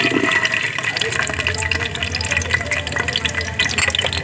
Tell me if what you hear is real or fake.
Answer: real